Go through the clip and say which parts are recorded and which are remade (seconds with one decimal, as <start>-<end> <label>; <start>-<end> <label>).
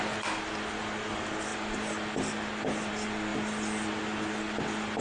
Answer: 0.0-5.0 recorded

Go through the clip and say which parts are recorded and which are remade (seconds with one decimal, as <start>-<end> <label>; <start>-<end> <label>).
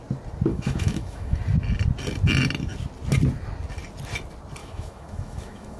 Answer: 0.0-0.5 recorded; 0.5-1.4 remade; 1.4-4.6 recorded; 4.6-5.8 remade